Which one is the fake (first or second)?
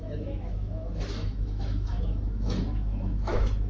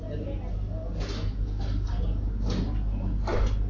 first